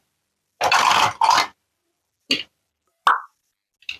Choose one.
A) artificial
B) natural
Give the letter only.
B